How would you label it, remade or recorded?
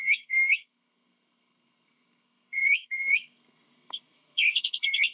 remade